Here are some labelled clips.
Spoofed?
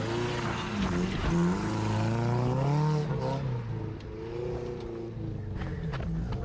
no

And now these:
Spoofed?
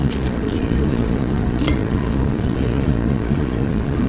yes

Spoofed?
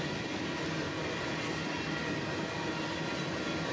no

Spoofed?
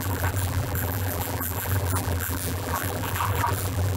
yes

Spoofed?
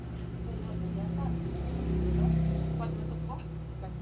no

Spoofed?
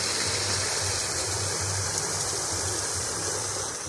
yes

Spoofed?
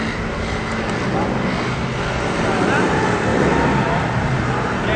no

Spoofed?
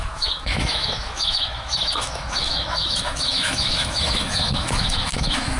yes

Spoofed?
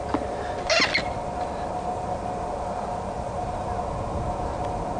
no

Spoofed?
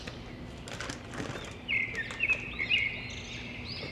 no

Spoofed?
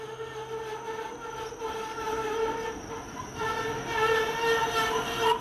no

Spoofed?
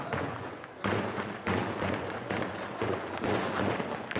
yes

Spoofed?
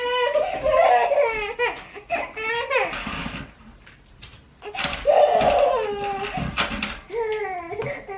no